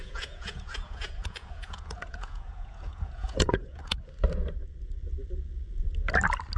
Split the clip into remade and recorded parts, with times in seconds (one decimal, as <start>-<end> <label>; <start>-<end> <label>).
0.0-4.0 remade; 4.0-6.6 recorded